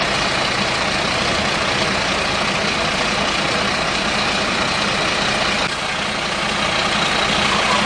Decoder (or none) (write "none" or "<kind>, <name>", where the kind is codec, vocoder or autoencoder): none